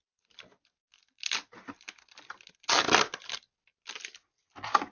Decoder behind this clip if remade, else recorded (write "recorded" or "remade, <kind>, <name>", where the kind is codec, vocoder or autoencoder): recorded